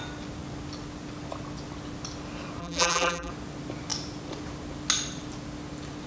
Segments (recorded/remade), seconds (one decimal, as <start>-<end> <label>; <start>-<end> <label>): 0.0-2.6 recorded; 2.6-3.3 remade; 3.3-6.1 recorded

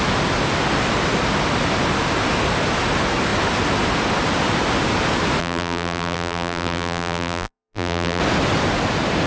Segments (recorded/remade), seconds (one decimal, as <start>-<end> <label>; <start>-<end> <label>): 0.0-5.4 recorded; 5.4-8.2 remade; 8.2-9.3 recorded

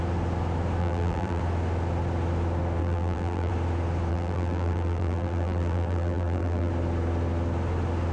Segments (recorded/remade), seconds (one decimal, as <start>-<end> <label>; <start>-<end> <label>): 0.0-0.8 recorded; 0.8-1.4 remade; 1.4-2.8 recorded; 2.8-3.5 remade; 3.5-4.1 recorded; 4.1-6.7 remade; 6.7-8.1 recorded

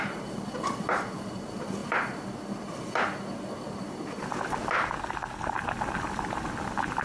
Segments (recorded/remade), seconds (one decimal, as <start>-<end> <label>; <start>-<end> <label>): 0.0-1.8 remade; 1.8-6.0 recorded; 6.0-7.0 remade

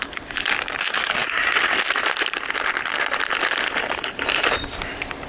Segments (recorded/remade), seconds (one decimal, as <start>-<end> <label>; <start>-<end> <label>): 0.0-5.3 recorded

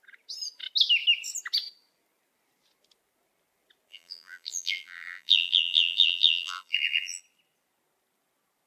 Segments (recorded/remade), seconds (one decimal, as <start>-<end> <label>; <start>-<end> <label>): 0.0-3.9 recorded; 3.9-7.2 remade; 7.2-8.7 recorded

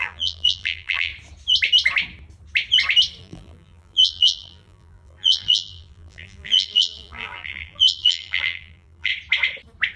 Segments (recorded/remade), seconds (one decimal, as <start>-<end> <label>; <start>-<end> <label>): 0.0-1.1 remade; 1.1-3.2 recorded; 3.2-9.1 remade; 9.1-10.0 recorded

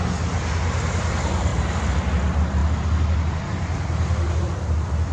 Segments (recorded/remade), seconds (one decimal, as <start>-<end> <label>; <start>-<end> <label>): 0.0-5.1 recorded